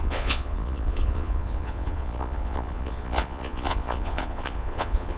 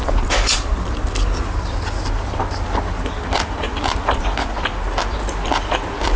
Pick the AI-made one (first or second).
first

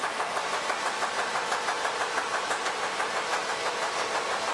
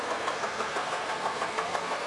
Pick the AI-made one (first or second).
second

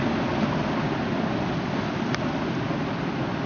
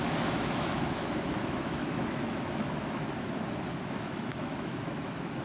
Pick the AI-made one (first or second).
second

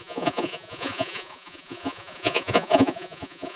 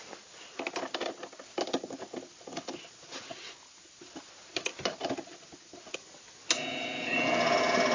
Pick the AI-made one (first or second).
first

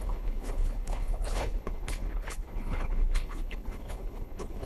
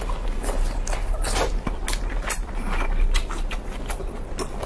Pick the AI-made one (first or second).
first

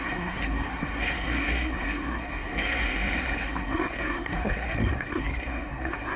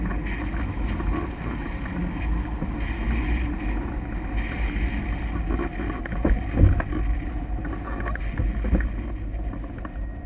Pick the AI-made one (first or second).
first